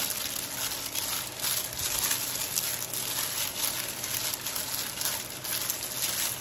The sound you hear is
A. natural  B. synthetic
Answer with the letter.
A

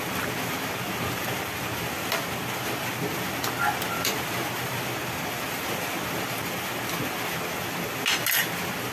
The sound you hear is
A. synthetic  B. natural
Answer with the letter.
B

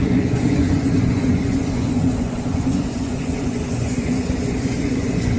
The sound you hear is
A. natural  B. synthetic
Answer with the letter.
B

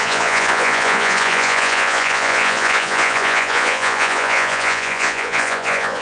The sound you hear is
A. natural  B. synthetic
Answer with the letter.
B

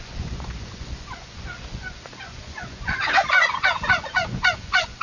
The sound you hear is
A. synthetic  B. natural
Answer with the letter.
A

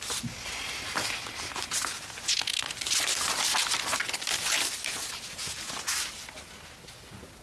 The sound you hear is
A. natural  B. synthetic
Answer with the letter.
A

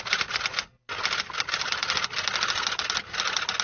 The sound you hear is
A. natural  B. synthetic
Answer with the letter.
A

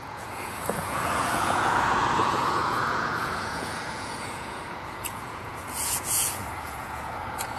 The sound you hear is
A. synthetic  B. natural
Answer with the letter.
A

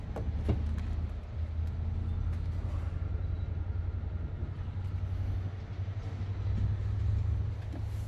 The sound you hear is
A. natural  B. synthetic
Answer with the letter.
A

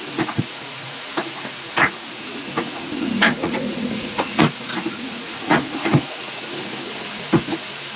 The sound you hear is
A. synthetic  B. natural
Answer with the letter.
A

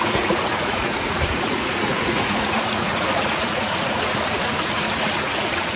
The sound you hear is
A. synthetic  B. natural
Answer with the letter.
A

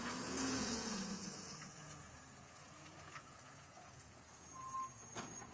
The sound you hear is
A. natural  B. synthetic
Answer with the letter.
B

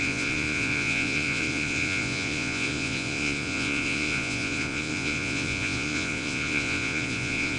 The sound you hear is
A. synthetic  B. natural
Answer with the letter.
A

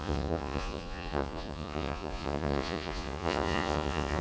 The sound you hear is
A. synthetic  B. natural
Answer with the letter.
A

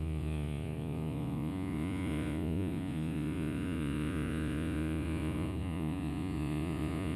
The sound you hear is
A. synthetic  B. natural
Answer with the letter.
A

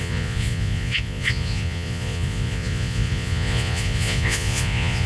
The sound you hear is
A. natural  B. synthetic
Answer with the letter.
B